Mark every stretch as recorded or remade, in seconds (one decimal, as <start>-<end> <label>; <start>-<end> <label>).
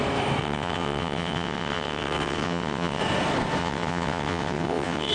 0.0-0.4 recorded; 0.4-3.0 remade; 3.0-3.6 recorded; 3.6-5.1 remade